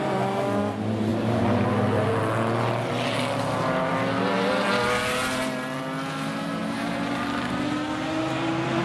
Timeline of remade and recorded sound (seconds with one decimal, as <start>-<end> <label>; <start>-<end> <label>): 0.0-8.8 recorded